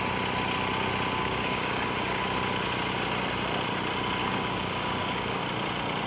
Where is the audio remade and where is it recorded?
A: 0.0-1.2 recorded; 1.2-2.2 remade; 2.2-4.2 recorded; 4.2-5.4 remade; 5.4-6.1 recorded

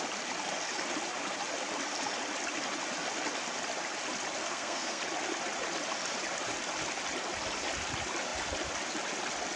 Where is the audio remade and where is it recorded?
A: 0.0-4.4 recorded; 4.4-5.0 remade; 5.0-9.6 recorded

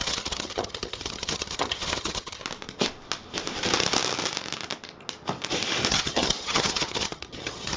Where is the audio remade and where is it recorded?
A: 0.0-2.4 remade; 2.4-5.9 recorded; 5.9-7.8 remade

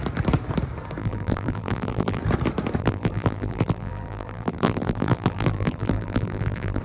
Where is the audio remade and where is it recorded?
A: 0.0-1.0 recorded; 1.0-2.2 remade; 2.2-2.8 recorded; 2.8-6.8 remade

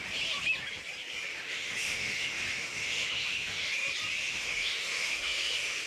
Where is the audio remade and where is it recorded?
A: 0.0-1.3 recorded; 1.3-3.7 remade; 3.7-4.2 recorded; 4.2-5.9 remade